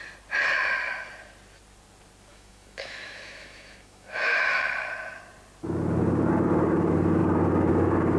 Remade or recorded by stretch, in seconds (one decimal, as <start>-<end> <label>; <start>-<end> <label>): 0.0-2.3 recorded; 2.3-4.6 remade; 4.6-8.2 recorded